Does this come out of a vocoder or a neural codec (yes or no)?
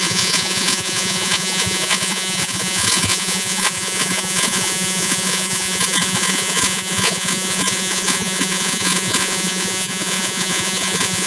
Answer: yes